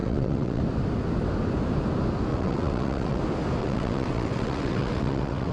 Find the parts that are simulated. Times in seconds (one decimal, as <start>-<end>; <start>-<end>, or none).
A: 0.0-0.6; 2.3-3.2; 3.6-5.5